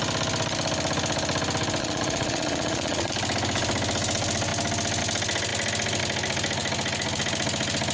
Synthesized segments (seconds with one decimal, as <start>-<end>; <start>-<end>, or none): 1.8-3.1